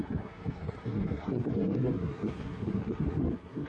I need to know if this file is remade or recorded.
remade